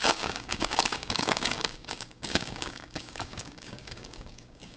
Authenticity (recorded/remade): remade